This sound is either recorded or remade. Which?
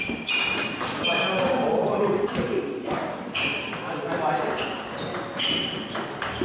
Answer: recorded